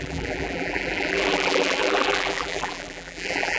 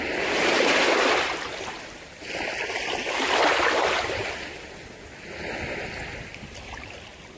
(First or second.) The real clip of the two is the second